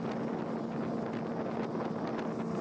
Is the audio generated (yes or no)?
no